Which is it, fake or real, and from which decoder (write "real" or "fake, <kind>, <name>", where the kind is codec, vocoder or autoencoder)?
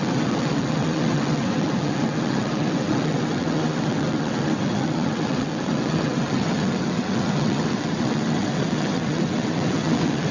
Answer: fake, vocoder, WaveNeXt